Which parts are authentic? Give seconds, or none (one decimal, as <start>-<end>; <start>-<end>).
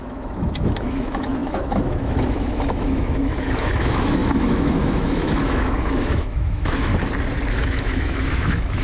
6.9-7.5